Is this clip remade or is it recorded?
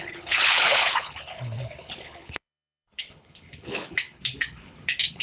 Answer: remade